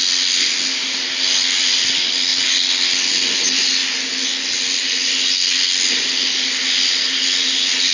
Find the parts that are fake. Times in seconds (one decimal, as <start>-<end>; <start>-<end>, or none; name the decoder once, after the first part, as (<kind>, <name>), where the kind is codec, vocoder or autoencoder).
none